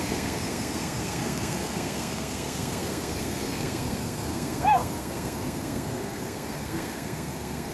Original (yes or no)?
no